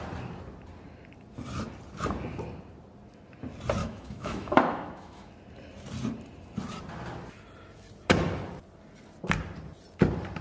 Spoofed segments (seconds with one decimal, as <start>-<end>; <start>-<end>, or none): 3.8-5.3